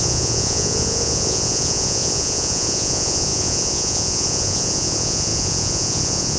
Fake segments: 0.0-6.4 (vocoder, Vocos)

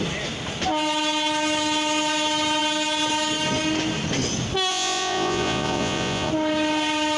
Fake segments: 4.7-6.3 (vocoder, Vocos)

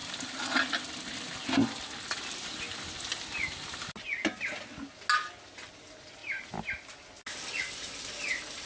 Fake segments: none